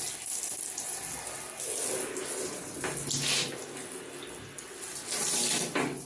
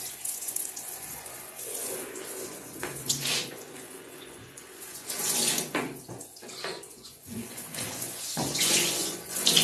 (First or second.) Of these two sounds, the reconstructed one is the second